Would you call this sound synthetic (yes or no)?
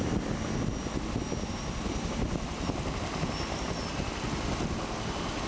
no